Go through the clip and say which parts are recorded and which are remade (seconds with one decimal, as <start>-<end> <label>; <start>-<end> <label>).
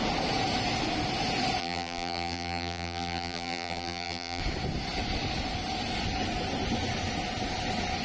0.0-1.6 recorded; 1.6-4.4 remade; 4.4-8.0 recorded